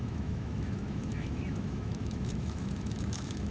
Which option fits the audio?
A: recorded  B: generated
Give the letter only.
B